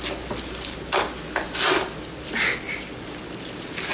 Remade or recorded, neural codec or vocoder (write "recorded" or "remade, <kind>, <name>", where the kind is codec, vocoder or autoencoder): recorded